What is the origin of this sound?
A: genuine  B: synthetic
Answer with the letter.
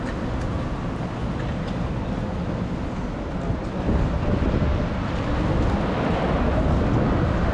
A